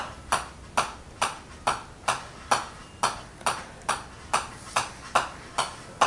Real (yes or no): yes